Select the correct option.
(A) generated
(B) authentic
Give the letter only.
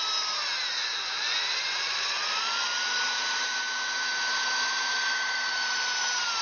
A